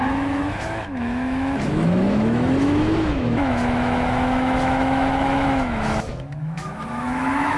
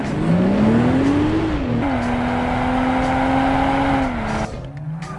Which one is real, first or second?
second